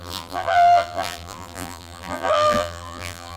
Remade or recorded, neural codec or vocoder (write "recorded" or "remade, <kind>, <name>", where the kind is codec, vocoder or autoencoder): remade, vocoder, BigVGAN v2